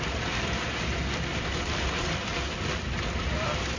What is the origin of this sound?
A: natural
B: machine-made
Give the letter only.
A